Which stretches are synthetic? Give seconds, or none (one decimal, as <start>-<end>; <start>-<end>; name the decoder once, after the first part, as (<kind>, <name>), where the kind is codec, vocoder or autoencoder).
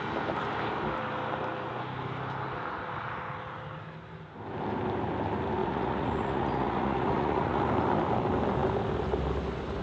5.6-7.6 (vocoder, Vocos)